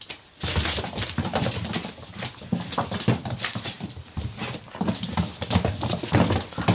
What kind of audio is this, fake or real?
real